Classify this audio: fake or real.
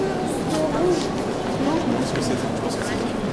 real